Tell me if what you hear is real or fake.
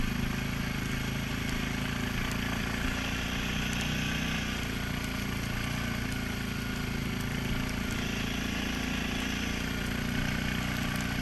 real